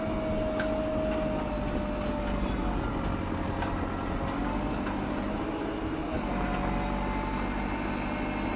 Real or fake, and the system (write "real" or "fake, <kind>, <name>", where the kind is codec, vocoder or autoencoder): real